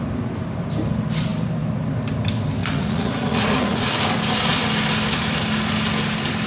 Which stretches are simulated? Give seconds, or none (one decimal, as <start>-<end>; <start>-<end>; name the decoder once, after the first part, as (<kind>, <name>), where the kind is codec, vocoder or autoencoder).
2.6-3.9 (vocoder, Vocos)

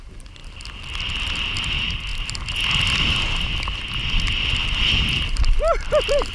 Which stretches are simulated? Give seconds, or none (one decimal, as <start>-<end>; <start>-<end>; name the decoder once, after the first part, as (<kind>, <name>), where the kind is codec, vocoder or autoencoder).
none

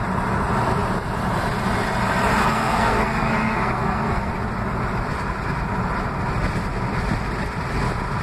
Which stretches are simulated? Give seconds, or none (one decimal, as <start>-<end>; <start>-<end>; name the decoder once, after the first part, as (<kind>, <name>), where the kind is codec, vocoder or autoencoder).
2.4-4.3 (codec, SNAC)

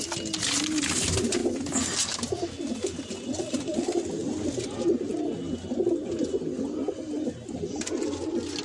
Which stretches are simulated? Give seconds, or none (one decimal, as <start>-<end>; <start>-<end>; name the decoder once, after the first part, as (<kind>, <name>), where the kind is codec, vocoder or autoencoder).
none